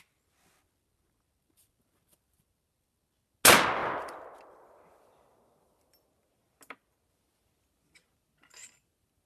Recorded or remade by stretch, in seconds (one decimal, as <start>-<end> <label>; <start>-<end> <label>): 0.0-9.3 recorded